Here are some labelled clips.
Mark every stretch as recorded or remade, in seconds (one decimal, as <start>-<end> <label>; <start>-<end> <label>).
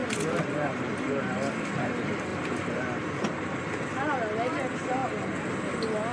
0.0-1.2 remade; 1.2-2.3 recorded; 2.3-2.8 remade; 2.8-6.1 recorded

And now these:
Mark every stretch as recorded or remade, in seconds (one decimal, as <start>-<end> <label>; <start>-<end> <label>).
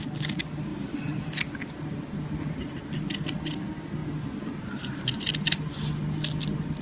0.0-6.8 recorded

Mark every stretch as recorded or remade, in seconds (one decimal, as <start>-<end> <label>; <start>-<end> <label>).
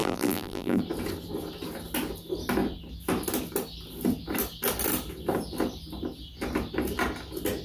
0.0-0.8 remade; 0.8-7.6 recorded